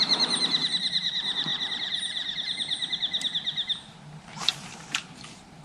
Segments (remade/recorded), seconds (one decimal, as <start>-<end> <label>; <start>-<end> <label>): 0.0-1.5 remade; 1.5-4.9 recorded; 4.9-5.6 remade